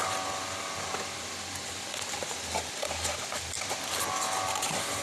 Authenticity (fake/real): real